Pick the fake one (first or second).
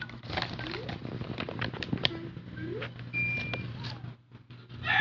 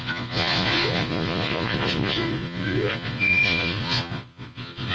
second